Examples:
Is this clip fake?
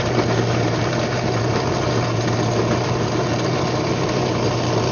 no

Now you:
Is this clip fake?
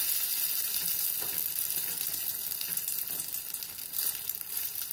no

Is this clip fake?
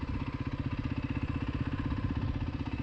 no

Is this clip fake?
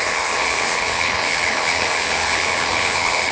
yes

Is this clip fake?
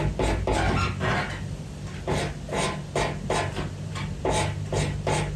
no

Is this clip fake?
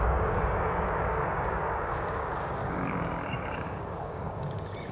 yes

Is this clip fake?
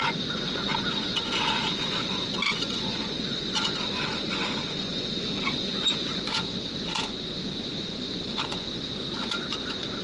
yes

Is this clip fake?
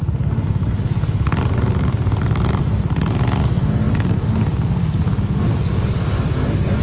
no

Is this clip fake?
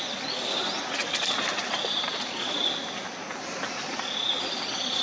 no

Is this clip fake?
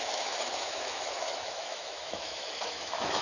yes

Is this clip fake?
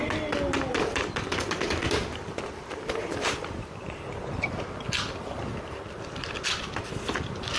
yes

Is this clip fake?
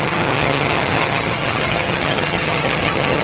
yes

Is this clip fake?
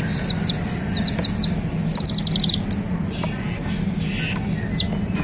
no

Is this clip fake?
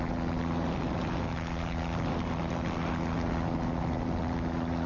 no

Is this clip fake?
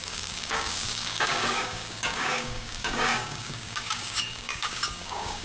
yes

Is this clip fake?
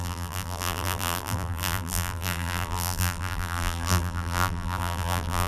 yes